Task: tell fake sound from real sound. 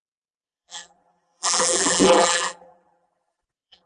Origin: fake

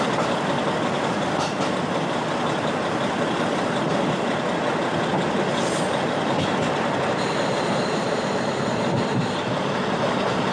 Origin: fake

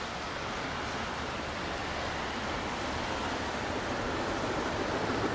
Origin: fake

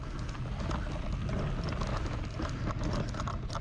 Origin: real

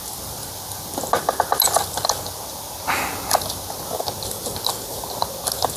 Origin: real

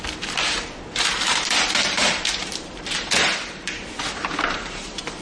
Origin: fake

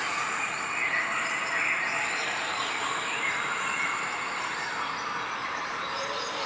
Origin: fake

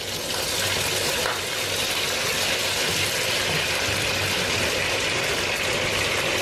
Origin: real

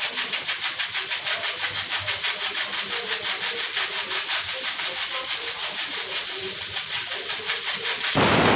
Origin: fake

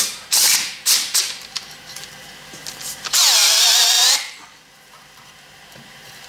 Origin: fake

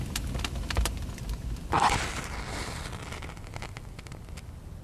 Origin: fake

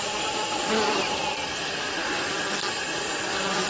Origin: real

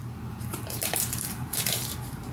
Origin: fake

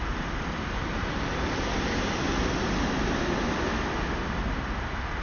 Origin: real